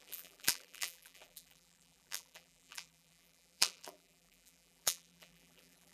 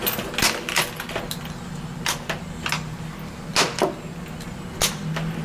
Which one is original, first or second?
second